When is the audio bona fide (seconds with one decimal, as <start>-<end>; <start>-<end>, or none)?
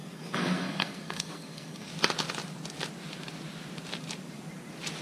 1.9-5.0